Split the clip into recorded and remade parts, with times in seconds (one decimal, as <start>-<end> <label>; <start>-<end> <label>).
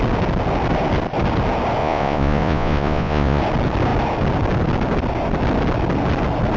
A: 0.0-1.8 recorded; 1.8-3.4 remade; 3.4-6.6 recorded